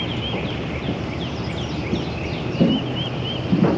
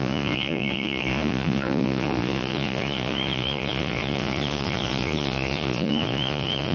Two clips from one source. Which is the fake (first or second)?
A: second